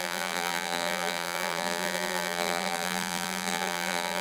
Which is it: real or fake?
fake